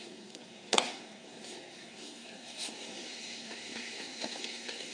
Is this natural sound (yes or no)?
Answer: no